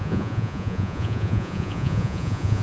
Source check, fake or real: fake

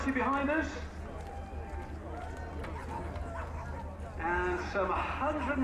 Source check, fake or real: real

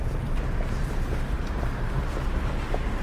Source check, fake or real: real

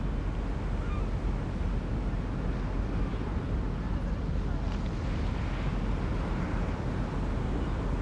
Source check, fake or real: real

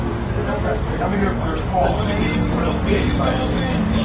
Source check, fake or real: fake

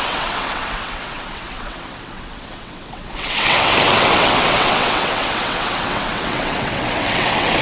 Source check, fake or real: fake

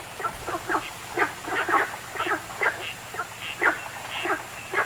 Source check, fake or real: real